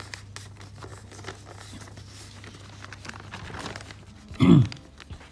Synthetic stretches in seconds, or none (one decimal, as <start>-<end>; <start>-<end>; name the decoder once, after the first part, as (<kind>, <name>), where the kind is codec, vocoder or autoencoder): none